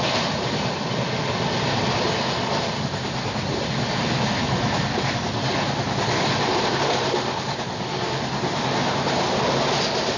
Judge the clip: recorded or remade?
recorded